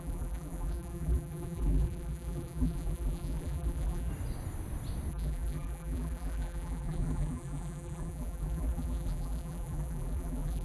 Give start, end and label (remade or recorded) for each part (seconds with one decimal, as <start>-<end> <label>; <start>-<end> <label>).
0.0-4.1 remade; 4.1-5.1 recorded; 5.1-10.6 remade